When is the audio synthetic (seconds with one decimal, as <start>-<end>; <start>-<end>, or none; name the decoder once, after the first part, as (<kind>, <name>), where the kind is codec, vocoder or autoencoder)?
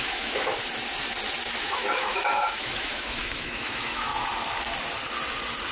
0.0-0.5 (autoencoder, DAC-VAE); 1.6-4.1